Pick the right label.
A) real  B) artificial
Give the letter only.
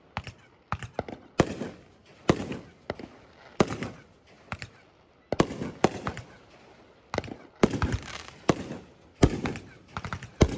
A